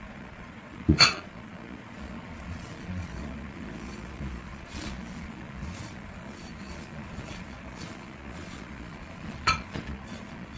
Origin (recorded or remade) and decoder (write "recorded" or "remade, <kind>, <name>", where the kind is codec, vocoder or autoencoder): remade, vocoder, Vocos